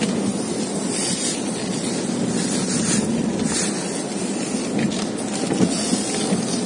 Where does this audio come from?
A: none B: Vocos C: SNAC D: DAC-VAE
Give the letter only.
A